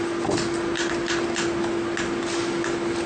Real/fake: real